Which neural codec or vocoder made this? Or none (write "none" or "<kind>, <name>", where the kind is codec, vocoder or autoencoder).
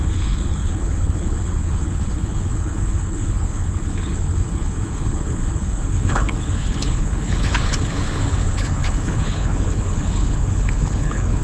codec, HILCodec